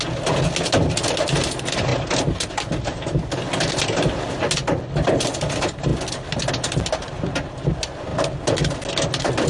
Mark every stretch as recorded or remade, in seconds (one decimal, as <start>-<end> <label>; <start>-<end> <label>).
0.0-9.5 recorded